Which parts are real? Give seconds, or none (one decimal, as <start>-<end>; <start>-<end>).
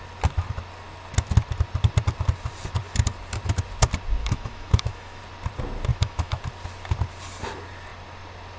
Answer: 0.0-4.2; 5.2-5.9; 6.4-8.6